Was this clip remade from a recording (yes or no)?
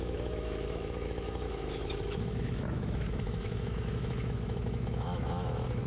yes